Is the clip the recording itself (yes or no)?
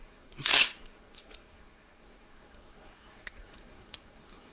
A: no